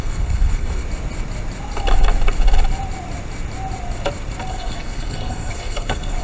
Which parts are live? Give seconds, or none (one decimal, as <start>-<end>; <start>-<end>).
0.8-4.5